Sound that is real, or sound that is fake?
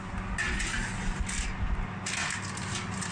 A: real